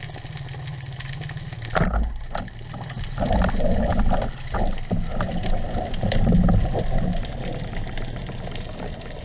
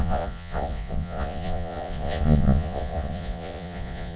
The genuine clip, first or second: first